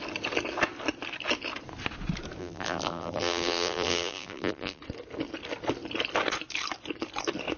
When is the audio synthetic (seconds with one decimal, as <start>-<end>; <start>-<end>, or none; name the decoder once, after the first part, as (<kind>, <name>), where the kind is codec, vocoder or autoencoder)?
2.4-4.8 (vocoder, BigVGAN v2)